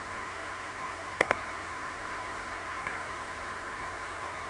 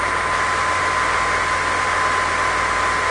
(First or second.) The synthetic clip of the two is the first